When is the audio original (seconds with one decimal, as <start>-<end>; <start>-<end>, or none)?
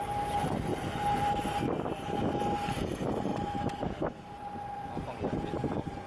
0.0-3.3; 4.4-6.1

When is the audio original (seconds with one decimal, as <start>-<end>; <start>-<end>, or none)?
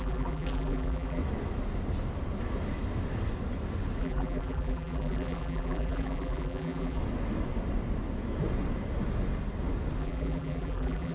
1.2-4.0; 7.0-10.0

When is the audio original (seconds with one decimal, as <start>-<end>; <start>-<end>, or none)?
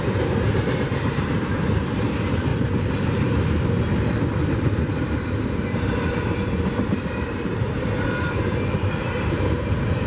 2.5-4.5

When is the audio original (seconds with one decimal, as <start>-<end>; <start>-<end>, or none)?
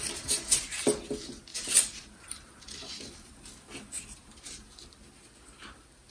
0.0-1.5; 4.4-6.1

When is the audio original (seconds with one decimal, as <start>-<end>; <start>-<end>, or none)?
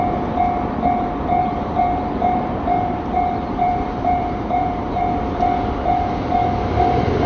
0.0-1.4; 5.0-7.3